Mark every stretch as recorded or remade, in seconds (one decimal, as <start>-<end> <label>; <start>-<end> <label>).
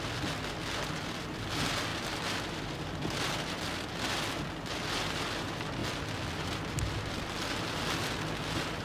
0.0-8.8 recorded